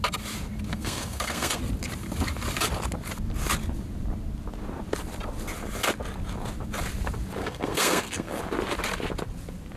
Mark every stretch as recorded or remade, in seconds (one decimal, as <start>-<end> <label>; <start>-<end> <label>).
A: 0.0-0.7 recorded; 0.7-1.6 remade; 1.6-7.4 recorded; 7.4-8.4 remade; 8.4-9.8 recorded